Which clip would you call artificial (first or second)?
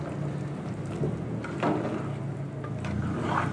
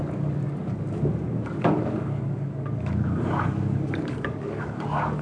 second